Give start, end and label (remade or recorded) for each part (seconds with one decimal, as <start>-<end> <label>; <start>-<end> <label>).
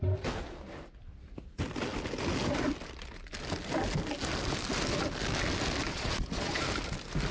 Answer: 0.0-5.9 recorded; 5.9-6.7 remade; 6.7-7.3 recorded